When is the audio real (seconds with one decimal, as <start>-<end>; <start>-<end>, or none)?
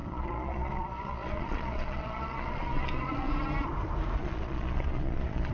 3.3-4.2